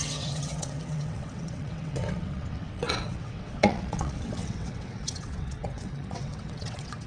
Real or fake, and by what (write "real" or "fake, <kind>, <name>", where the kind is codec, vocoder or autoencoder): fake, vocoder, WaveNeXt